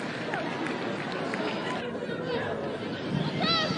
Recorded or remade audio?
recorded